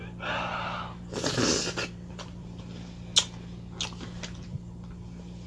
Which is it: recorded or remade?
recorded